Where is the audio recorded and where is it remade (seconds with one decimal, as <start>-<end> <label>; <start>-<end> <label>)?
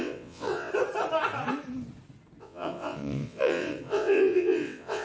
0.0-0.7 remade; 0.7-2.4 recorded; 2.4-5.0 remade